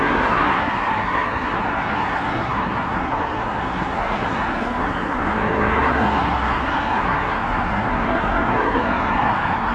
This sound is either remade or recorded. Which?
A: remade